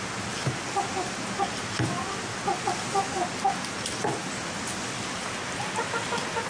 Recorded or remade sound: recorded